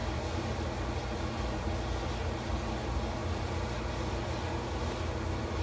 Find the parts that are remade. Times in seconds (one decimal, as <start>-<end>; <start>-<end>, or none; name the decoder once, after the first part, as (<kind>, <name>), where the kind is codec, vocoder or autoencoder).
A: none